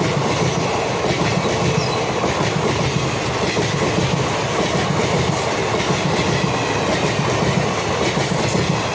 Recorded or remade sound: recorded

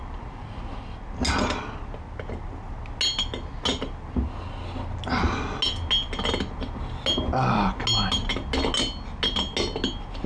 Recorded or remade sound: recorded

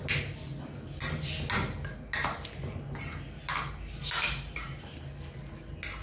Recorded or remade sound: recorded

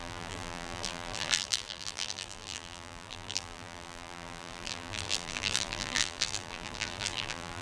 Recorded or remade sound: remade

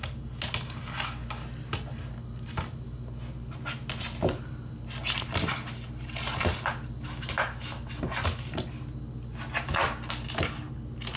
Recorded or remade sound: recorded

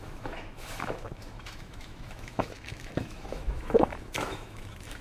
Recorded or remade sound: remade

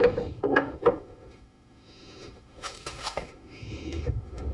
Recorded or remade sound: remade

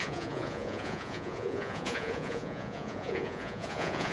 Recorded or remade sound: remade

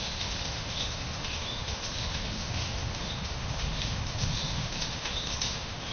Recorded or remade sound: remade